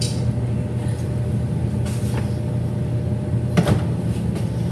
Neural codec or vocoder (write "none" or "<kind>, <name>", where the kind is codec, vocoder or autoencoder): none